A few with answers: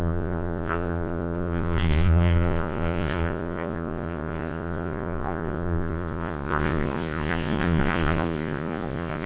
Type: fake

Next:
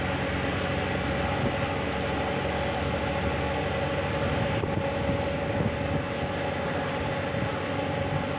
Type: real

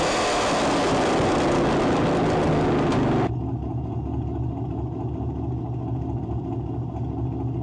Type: real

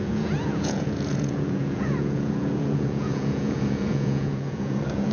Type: fake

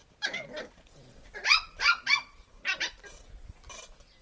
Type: fake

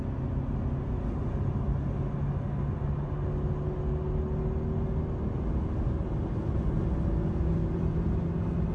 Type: real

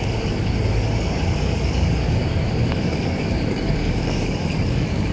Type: fake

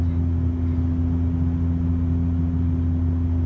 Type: real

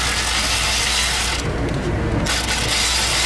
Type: real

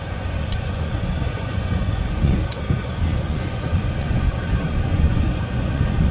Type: fake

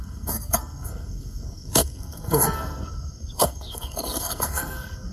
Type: fake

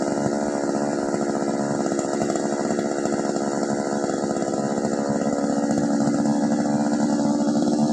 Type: real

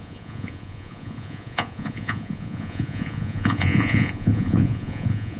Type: fake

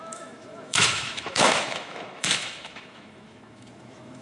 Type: fake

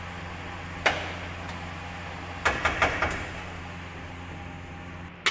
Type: real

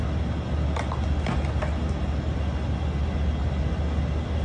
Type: real